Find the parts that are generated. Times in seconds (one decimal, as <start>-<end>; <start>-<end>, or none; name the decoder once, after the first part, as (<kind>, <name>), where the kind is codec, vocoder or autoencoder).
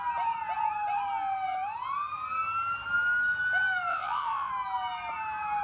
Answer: 3.9-4.5 (vocoder, WaveNeXt)